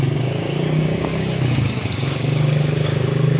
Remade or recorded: remade